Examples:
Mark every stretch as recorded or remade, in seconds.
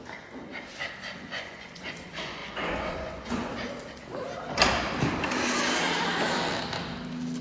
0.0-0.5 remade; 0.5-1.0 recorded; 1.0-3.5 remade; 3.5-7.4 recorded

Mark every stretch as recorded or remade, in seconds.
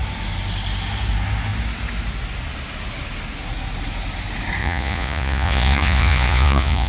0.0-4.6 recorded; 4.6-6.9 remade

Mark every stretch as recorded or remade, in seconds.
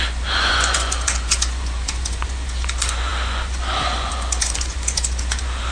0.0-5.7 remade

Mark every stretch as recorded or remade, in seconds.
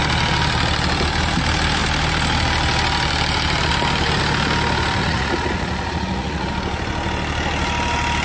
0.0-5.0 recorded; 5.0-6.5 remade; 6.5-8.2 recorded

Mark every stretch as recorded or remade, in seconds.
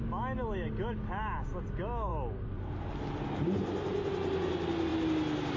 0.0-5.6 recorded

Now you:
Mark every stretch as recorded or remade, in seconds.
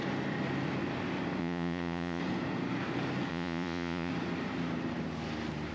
0.0-1.4 recorded; 1.4-2.2 remade; 2.2-3.3 recorded; 3.3-4.1 remade; 4.1-5.7 recorded